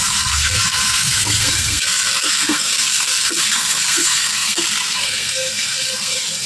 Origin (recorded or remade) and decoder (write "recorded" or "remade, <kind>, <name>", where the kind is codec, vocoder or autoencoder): remade, codec, SNAC